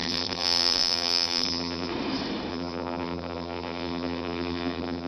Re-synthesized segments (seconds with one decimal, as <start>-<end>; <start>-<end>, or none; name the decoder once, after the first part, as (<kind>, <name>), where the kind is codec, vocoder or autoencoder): 0.0-1.9 (vocoder, BigVGAN v2); 2.5-5.1